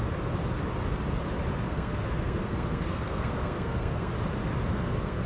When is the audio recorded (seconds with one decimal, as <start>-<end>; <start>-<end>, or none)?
0.0-1.5; 4.1-4.7